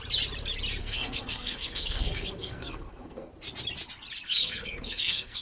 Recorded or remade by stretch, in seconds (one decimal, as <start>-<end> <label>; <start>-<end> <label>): 0.0-0.8 recorded; 0.8-3.3 remade; 3.3-4.3 recorded; 4.3-5.4 remade